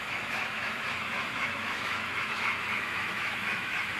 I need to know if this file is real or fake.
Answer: fake